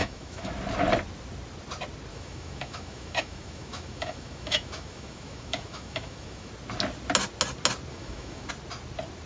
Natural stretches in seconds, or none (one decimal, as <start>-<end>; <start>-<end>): 0.5-2.1; 6.5-7.9; 8.5-9.3